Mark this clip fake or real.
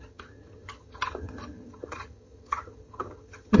fake